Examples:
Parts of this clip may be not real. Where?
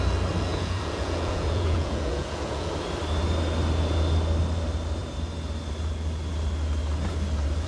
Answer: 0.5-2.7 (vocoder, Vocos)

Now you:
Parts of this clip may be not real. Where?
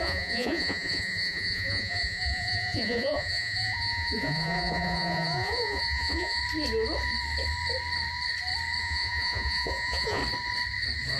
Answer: 0.0-6.4 (vocoder, Vocos); 8.8-10.2